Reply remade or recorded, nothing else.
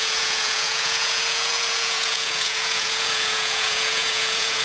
remade